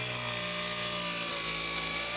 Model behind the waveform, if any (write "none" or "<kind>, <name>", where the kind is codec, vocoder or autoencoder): none